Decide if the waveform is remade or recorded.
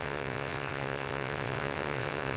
remade